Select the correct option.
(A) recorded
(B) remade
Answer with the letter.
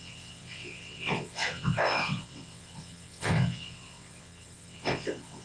B